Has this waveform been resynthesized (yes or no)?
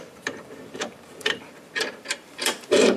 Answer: yes